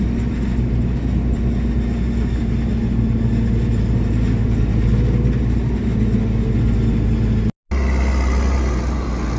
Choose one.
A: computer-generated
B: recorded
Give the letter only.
B